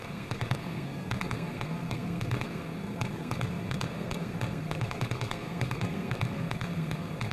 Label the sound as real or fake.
fake